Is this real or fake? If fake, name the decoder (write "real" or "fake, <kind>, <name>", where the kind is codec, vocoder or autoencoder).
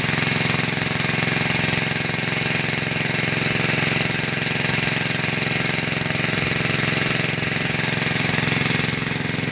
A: real